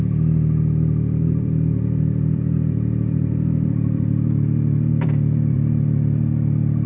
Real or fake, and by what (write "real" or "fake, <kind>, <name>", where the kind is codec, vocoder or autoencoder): fake, vocoder, BigVGAN v2